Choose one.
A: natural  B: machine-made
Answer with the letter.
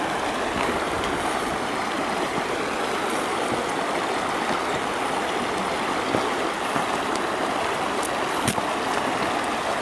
A